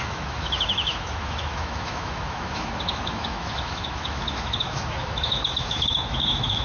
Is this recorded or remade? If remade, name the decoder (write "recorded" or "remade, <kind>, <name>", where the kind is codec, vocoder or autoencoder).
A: remade, autoencoder, DAC-VAE